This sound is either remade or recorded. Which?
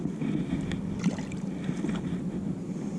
recorded